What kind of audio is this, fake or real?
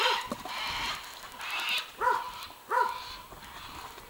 real